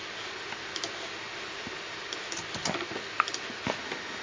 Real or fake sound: real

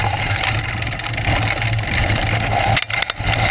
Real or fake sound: real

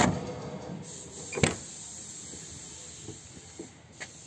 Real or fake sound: real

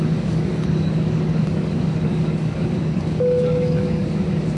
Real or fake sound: fake